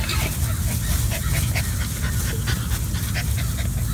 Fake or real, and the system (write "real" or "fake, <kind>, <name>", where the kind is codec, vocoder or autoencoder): real